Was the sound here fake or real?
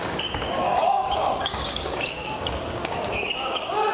fake